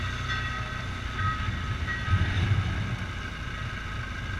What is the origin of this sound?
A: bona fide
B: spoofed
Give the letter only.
A